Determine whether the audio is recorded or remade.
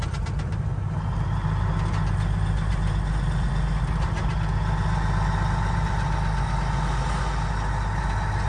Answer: recorded